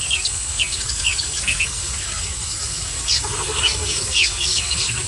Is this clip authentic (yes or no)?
no